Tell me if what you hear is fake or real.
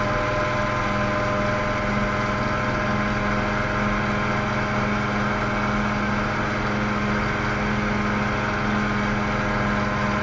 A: real